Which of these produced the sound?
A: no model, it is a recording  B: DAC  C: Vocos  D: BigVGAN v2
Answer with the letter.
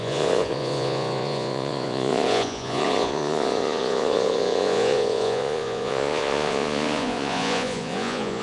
C